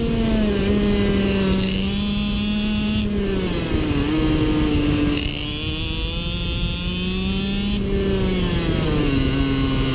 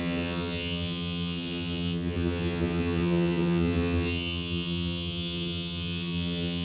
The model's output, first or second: second